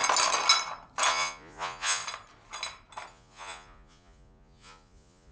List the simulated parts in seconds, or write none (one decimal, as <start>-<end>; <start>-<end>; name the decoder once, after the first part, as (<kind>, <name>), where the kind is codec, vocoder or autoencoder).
1.1-2.0 (vocoder, Vocos); 3.1-5.3